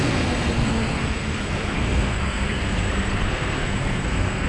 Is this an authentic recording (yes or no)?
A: no